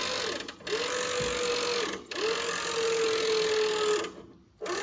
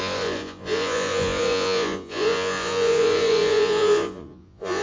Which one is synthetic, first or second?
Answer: second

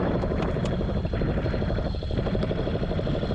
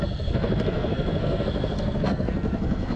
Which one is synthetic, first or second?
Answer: second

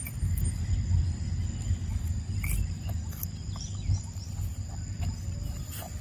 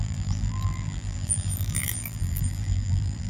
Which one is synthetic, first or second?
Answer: second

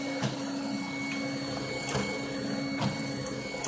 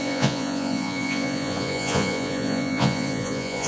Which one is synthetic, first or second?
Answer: second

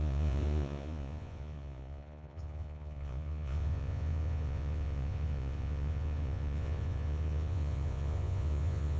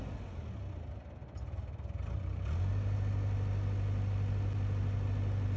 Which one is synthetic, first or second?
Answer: first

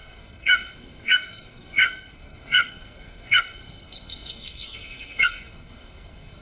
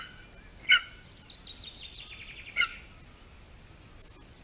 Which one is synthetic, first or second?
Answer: first